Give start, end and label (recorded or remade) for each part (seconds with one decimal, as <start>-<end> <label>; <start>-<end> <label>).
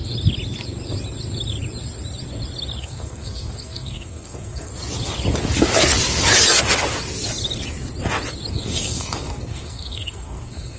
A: 0.0-2.8 recorded; 2.8-4.7 remade; 4.7-8.5 recorded; 8.5-10.8 remade